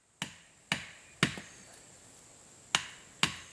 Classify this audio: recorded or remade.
recorded